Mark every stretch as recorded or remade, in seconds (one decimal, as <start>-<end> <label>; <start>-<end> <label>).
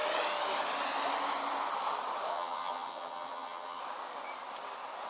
0.0-2.3 recorded; 2.3-3.8 remade; 3.8-5.1 recorded